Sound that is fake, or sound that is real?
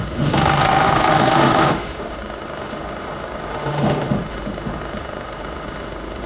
fake